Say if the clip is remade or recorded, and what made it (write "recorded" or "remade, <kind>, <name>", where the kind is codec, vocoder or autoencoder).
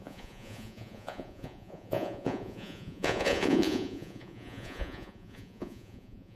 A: remade, vocoder, Vocos